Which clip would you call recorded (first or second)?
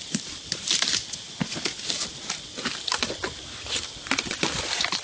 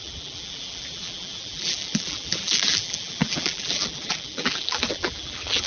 first